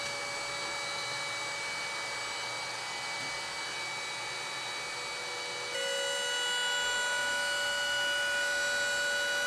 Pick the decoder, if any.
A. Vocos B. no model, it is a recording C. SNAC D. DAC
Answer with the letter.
B